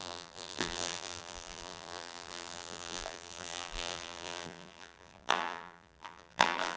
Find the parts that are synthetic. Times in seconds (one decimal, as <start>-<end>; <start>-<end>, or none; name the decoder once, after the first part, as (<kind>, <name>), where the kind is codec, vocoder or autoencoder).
0.0-6.8 (vocoder, BigVGAN v2)